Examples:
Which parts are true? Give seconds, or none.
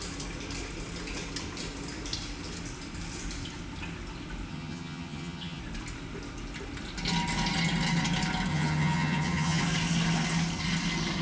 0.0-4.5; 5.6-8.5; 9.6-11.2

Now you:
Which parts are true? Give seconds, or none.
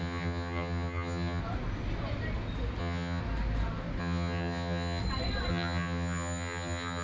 1.4-2.8; 3.2-4.0; 5.0-5.5